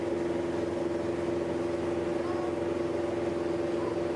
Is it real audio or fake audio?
real